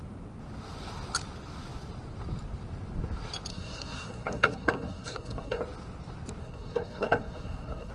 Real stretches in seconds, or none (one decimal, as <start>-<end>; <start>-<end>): 0.0-3.5; 5.6-6.4

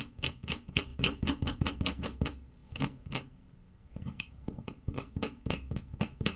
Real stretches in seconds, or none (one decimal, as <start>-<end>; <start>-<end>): none

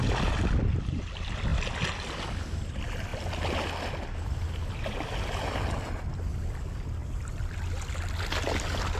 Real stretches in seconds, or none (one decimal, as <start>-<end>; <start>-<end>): 0.0-9.0

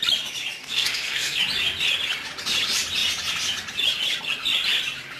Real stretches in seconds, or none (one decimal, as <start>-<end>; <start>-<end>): 0.0-0.6; 1.4-5.2

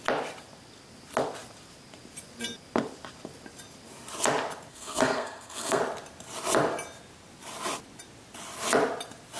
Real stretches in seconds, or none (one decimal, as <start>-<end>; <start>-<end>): 0.0-4.7; 5.8-9.4

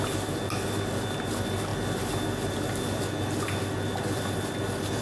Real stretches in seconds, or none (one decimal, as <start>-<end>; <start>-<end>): 0.0-5.0

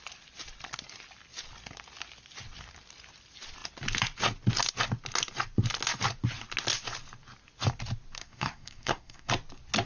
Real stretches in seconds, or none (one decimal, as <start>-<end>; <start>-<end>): 0.0-8.2; 9.3-9.9

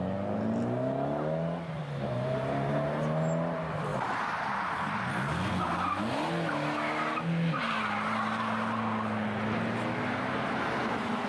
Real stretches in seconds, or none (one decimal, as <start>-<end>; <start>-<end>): 0.0-11.3